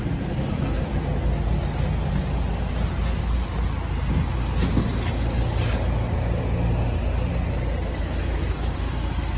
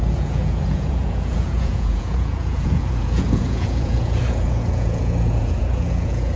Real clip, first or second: first